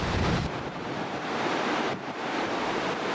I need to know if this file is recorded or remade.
remade